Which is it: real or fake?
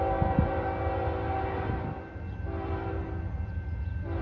real